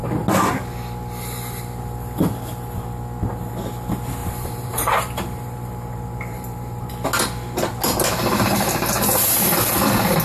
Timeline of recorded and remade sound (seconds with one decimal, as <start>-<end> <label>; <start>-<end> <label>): 0.0-4.2 recorded; 4.2-6.9 remade; 6.9-8.5 recorded; 8.5-9.5 remade; 9.5-10.2 recorded